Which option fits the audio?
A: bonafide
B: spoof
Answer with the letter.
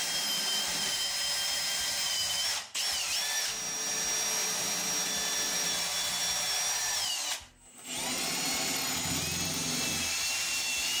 A